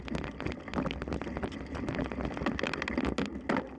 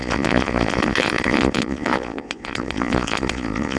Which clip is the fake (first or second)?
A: second